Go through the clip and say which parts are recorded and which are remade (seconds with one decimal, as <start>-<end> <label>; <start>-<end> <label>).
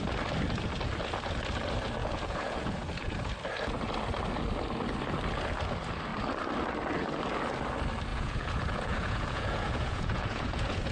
0.0-2.0 recorded; 2.0-3.3 remade; 3.3-8.1 recorded; 8.1-10.9 remade